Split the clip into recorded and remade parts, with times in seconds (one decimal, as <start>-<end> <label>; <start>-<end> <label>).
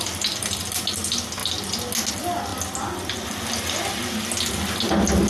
0.0-5.3 recorded